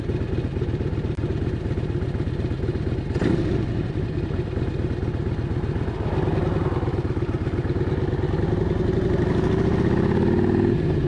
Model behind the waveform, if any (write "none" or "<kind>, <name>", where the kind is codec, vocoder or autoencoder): none